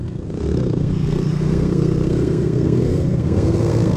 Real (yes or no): no